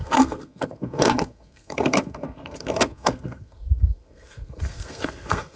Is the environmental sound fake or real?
fake